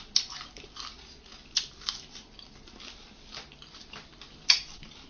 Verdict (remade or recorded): recorded